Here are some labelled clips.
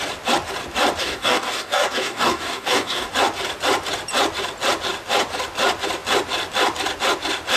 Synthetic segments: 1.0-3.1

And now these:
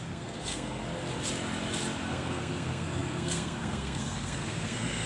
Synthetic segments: 0.0-0.8; 2.1-5.1

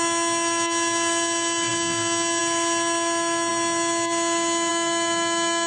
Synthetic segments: none

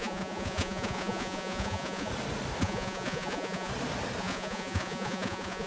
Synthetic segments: 0.0-2.1; 2.6-3.7; 4.2-5.7

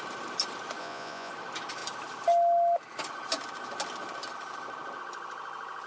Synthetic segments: 0.8-1.3

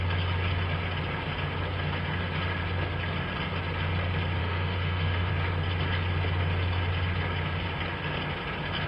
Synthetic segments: 4.4-5.3

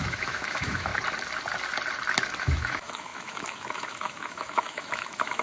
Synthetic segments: 0.0-0.9; 2.4-5.4